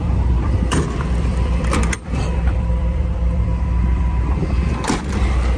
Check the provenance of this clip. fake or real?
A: fake